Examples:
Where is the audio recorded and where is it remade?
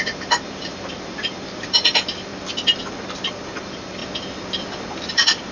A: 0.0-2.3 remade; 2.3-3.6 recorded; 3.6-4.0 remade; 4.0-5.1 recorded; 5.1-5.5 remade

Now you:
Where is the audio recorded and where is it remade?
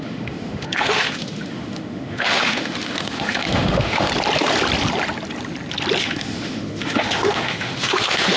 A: 0.0-4.1 remade; 4.1-6.0 recorded; 6.0-8.4 remade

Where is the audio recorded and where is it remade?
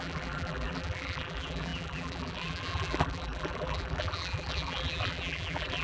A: 0.0-5.8 remade